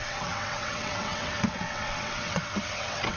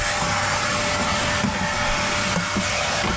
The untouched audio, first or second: second